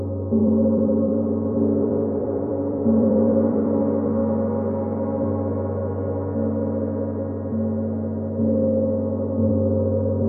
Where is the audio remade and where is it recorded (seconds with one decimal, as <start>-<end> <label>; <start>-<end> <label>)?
0.0-0.4 recorded; 0.4-3.8 remade; 3.8-10.3 recorded